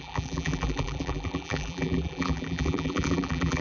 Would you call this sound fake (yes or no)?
yes